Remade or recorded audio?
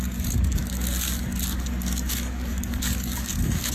remade